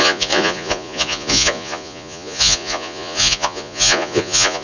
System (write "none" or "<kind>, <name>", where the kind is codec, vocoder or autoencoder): vocoder, Vocos